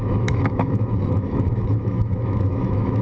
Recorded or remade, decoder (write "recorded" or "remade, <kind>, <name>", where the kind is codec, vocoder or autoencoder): remade, autoencoder, DAC-VAE